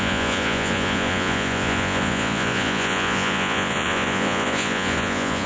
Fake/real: fake